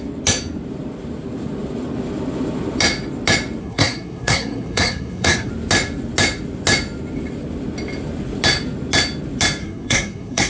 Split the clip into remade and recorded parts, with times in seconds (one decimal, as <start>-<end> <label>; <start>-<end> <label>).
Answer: 0.0-3.6 recorded; 3.6-5.5 remade; 5.5-9.6 recorded; 9.6-10.5 remade